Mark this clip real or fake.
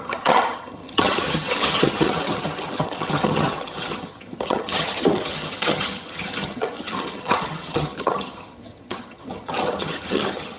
fake